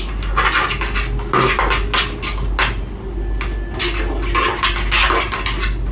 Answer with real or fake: real